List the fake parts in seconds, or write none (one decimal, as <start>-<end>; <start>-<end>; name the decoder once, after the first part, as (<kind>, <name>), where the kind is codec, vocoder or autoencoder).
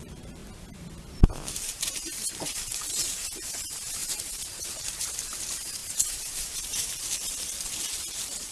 0.0-0.4 (vocoder, BigVGAN v2); 1.3-8.5